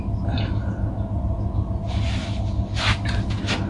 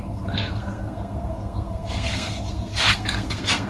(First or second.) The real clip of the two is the first